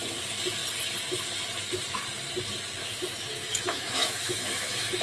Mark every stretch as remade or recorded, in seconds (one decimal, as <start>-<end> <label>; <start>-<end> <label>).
0.0-2.8 recorded; 2.8-5.0 remade